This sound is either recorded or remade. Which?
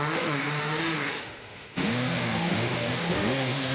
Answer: remade